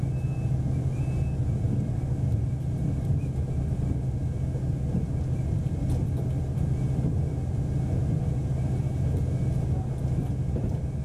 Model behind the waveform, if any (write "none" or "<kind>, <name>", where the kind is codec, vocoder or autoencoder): none